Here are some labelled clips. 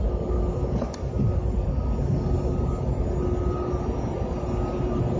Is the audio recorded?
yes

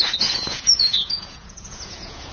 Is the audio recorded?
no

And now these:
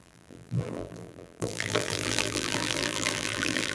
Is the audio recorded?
no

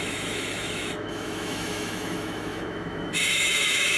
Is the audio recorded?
no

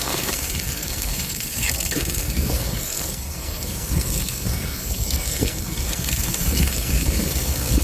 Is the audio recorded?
no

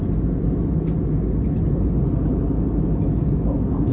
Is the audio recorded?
yes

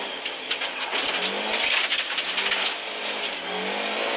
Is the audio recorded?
yes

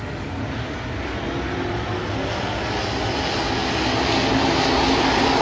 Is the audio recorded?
yes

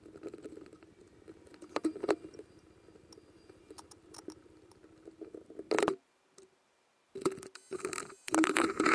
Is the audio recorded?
yes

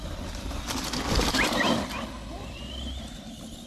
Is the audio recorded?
yes